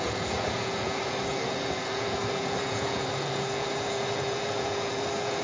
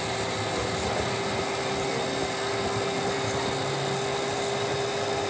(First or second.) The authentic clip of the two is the second